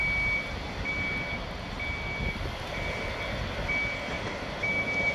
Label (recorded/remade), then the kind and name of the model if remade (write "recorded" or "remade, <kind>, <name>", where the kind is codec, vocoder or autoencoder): recorded